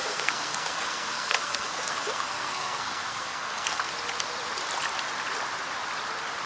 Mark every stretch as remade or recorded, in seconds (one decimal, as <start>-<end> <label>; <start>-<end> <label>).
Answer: 0.0-3.9 remade; 3.9-6.5 recorded